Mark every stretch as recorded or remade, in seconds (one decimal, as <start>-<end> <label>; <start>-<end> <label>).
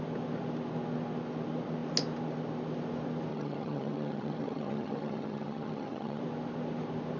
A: 0.0-3.3 recorded; 3.3-6.2 remade; 6.2-7.2 recorded